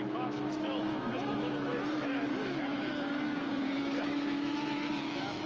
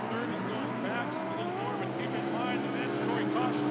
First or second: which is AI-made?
first